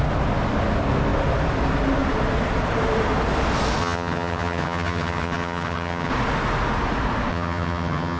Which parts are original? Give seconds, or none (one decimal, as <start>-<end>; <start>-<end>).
0.0-3.8; 6.1-7.3